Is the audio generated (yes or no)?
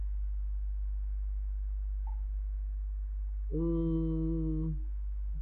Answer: no